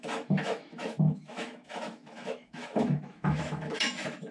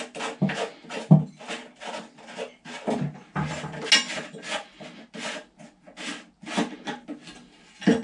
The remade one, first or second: first